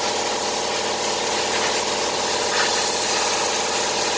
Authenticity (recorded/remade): recorded